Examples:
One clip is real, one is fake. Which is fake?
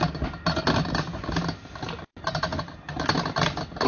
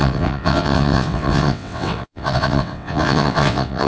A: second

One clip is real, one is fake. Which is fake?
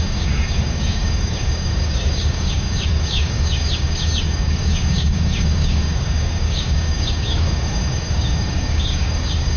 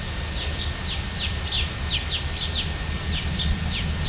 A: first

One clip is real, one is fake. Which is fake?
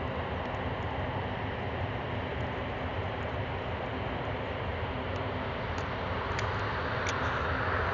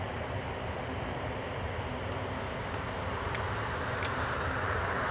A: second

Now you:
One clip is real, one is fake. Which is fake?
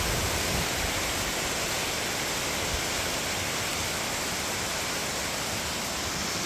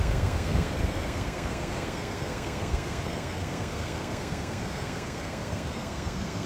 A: second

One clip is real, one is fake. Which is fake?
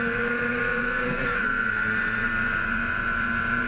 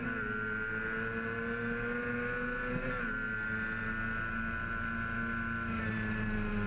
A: first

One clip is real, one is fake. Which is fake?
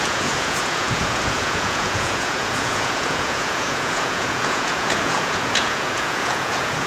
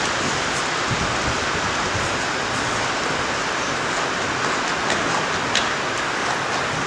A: first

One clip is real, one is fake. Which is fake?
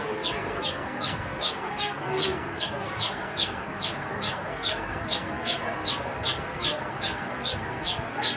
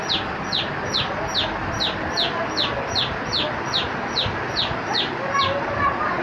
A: first